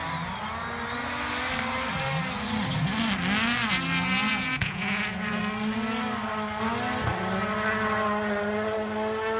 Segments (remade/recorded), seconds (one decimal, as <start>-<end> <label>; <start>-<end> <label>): 0.0-4.3 recorded; 4.3-5.4 remade; 5.4-9.4 recorded